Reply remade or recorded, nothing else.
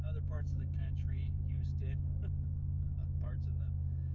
remade